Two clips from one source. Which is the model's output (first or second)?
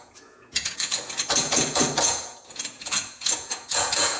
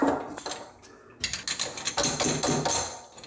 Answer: first